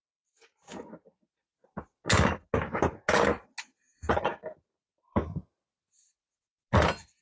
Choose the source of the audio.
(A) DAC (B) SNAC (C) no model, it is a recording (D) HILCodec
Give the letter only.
C